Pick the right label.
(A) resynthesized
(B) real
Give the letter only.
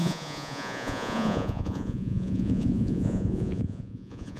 A